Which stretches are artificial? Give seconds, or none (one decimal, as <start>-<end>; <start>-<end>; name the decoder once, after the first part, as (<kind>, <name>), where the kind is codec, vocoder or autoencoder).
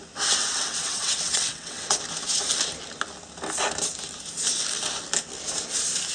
0.4-2.0 (vocoder, WaveNeXt)